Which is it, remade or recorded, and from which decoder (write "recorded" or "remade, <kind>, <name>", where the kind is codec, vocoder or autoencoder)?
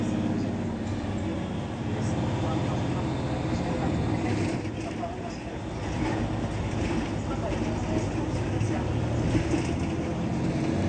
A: recorded